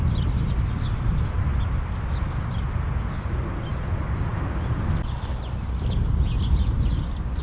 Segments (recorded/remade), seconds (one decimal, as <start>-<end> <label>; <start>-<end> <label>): 0.0-7.4 recorded